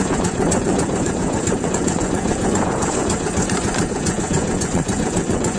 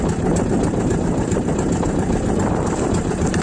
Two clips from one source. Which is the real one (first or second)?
second